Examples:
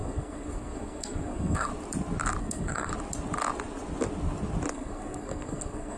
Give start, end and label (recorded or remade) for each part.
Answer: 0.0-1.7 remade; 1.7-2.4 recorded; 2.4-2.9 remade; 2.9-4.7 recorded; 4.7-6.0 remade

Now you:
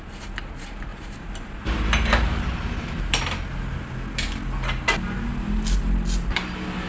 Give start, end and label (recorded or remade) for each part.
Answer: 0.0-0.9 recorded; 0.9-2.4 remade; 2.4-6.9 recorded

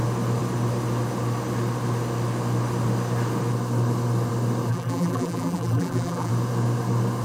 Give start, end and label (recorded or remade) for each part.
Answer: 0.0-4.7 recorded; 4.7-6.3 remade; 6.3-7.2 recorded

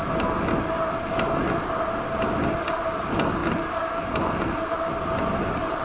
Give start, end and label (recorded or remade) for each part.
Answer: 0.0-5.8 recorded